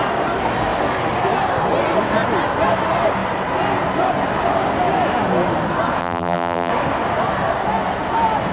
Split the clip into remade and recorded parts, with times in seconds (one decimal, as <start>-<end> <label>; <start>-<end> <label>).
0.0-6.0 recorded; 6.0-6.7 remade; 6.7-8.5 recorded